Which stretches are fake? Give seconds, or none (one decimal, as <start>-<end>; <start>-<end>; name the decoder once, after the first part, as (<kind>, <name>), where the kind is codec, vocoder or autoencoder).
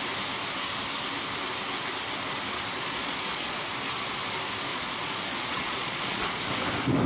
2.7-3.6 (vocoder, Vocos); 4.7-6.4